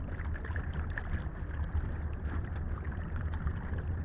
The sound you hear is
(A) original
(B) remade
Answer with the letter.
A